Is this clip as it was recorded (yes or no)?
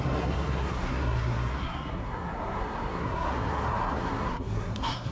no